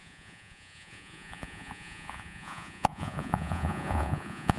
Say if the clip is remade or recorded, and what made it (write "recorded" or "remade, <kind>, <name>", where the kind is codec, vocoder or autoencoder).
remade, vocoder, Vocos